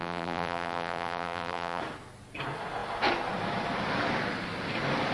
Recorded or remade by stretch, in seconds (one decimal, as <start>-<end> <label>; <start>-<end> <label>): 0.0-1.8 remade; 1.8-5.1 recorded

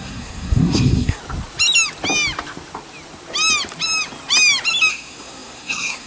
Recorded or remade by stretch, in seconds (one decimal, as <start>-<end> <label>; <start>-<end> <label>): 0.0-1.2 remade; 1.2-4.9 recorded; 4.9-6.1 remade

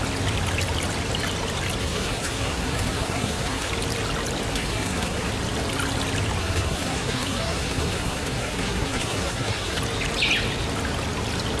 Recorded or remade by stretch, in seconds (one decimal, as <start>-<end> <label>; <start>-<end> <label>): 0.0-1.8 recorded; 1.8-3.7 remade; 3.7-4.5 recorded; 4.5-5.3 remade; 5.3-6.4 recorded; 6.4-9.8 remade; 9.8-11.6 recorded

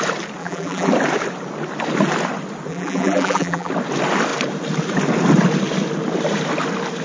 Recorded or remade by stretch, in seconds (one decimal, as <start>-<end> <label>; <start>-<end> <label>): 0.0-0.4 recorded; 0.4-0.9 remade; 0.9-2.7 recorded; 2.7-3.7 remade; 3.7-7.0 recorded

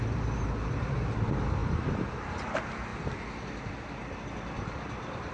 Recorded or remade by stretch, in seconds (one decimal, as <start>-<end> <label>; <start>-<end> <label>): 0.0-5.3 recorded

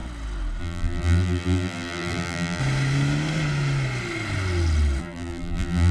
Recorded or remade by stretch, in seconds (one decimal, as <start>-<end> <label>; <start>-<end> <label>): 0.0-0.6 recorded; 0.6-2.6 remade; 2.6-5.0 recorded; 5.0-5.9 remade